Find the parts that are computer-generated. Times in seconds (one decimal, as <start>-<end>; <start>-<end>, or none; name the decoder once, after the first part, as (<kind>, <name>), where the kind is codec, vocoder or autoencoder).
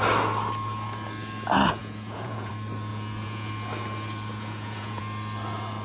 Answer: 1.8-2.5 (vocoder, Vocos); 2.9-3.5; 4.3-5.0